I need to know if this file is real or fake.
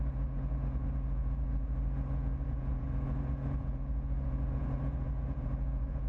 fake